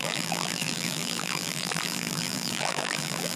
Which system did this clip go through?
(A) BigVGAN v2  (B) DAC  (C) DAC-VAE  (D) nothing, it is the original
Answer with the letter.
A